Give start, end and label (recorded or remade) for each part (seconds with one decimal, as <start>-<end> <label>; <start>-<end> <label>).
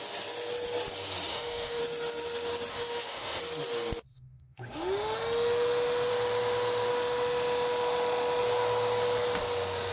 0.0-1.3 recorded; 1.3-1.8 remade; 1.8-2.7 recorded; 2.7-3.4 remade; 3.4-4.1 recorded; 4.1-6.1 remade; 6.1-6.9 recorded; 6.9-8.4 remade; 8.4-9.9 recorded